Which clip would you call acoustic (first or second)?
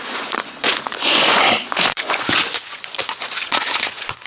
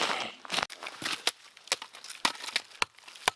second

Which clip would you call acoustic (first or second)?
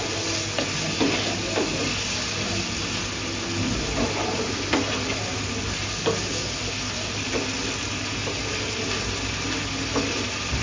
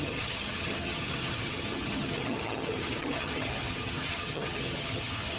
first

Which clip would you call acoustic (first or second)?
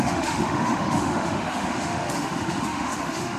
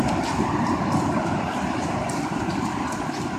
second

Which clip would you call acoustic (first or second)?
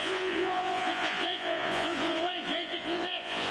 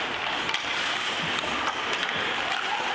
second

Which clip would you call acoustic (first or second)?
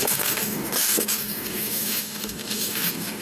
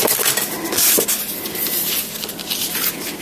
second